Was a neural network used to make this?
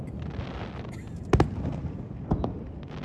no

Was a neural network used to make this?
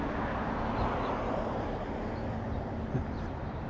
no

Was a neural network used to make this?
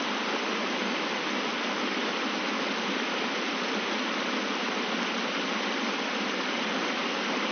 yes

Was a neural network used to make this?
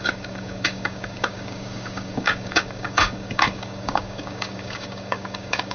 yes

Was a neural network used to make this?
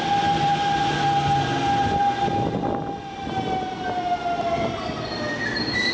no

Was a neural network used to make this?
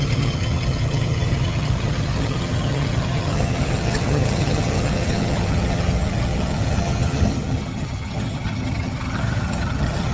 yes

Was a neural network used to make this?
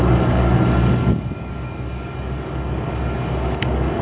yes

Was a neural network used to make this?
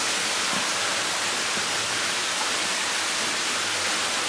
no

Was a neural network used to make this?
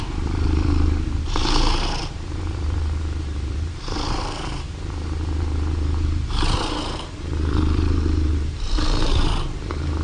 yes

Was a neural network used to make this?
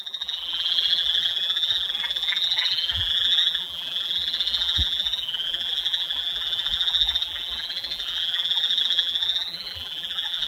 yes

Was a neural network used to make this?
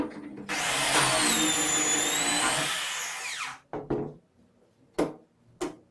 no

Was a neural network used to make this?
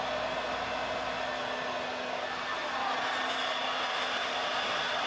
no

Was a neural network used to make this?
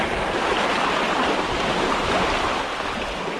no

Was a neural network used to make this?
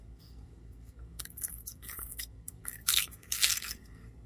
yes